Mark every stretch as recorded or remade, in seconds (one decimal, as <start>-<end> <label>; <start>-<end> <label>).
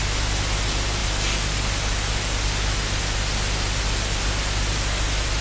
0.0-5.4 recorded